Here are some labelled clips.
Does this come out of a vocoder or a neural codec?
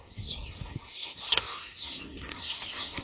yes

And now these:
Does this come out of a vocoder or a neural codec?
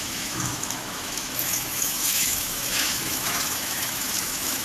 yes